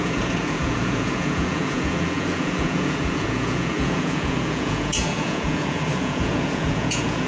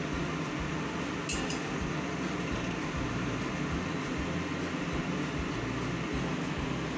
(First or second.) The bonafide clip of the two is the second